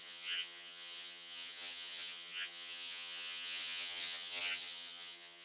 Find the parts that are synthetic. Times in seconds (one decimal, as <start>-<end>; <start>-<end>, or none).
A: 0.0-5.4